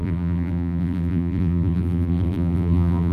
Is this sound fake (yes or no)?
yes